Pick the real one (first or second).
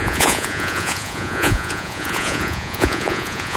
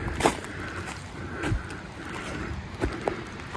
second